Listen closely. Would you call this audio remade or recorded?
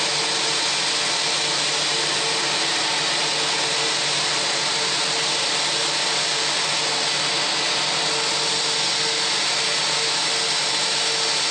recorded